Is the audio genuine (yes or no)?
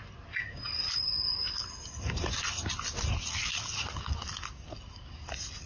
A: yes